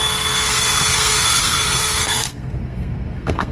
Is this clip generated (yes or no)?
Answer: yes